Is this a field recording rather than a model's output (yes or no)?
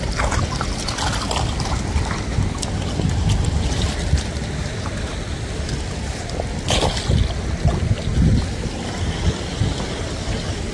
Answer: yes